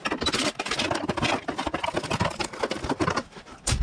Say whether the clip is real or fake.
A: real